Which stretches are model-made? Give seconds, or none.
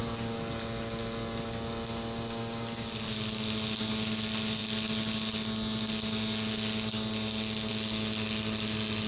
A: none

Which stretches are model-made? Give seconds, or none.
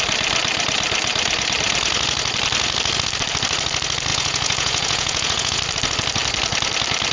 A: 4.1-5.6 (vocoder, Vocos)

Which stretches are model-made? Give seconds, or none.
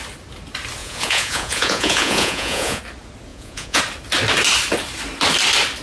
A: 0.8-2.8 (vocoder, Vocos); 3.3-3.8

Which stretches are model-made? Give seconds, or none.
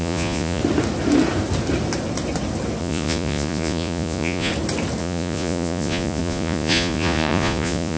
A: 0.0-0.6 (vocoder, Vocos); 2.8-4.5; 5.0-8.0